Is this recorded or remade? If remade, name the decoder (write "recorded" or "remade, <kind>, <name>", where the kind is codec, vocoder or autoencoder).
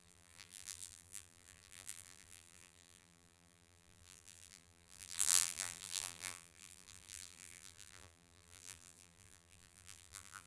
remade, vocoder, BigVGAN v2